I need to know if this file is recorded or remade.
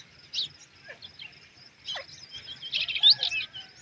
recorded